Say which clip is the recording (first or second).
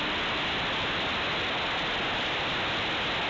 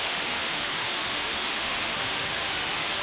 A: first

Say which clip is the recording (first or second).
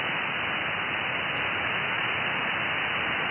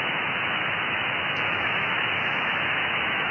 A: first